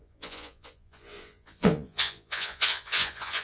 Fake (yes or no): yes